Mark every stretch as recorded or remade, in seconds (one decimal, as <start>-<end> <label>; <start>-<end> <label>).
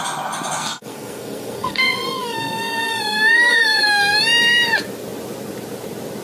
0.0-0.6 recorded; 0.6-4.2 remade; 4.2-6.2 recorded